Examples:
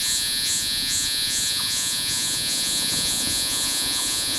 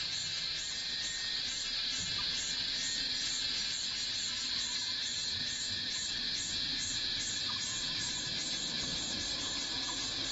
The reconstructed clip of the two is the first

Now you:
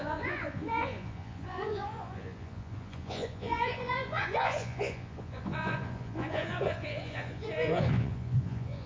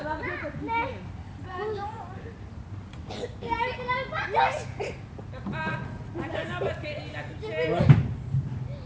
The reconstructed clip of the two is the first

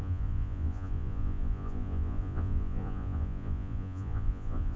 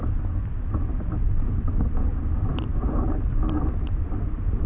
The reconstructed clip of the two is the first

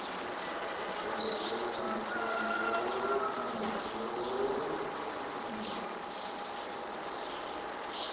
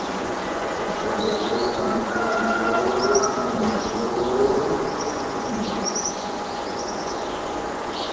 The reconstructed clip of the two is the second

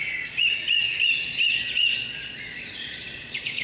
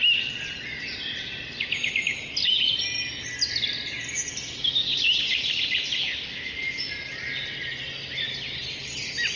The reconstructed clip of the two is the first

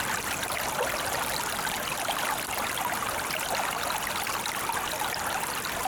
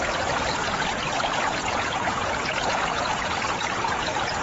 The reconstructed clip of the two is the second